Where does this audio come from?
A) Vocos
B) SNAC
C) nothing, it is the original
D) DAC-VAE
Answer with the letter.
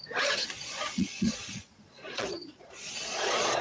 A